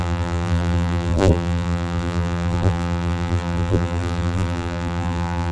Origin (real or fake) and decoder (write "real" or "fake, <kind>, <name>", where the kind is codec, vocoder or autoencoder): fake, vocoder, BigVGAN v2